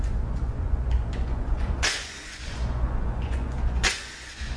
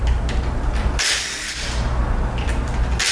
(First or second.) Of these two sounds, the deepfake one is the first